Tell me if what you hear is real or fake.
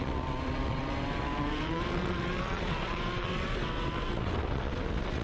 fake